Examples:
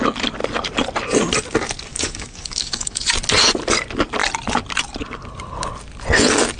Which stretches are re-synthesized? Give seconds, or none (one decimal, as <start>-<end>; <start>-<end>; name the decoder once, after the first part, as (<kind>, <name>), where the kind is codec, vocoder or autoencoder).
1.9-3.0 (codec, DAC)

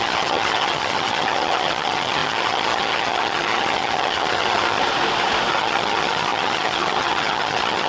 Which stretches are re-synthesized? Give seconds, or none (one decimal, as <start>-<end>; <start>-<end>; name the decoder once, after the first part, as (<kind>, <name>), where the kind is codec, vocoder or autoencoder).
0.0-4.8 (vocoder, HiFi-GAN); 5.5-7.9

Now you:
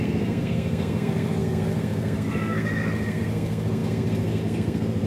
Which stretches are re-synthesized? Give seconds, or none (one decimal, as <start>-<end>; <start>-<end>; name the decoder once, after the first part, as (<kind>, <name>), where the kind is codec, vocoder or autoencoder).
0.0-5.1 (codec, SNAC)